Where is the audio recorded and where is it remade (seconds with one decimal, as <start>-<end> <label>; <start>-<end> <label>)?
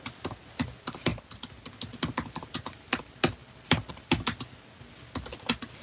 0.0-5.8 recorded